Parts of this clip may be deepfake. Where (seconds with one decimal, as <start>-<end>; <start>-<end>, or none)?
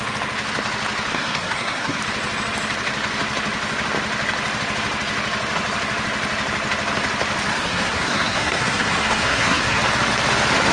1.1-2.0; 7.5-9.8